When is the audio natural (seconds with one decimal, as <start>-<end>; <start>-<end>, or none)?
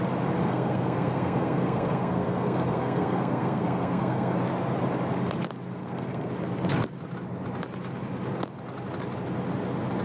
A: 0.0-0.4; 4.4-5.8; 6.3-10.0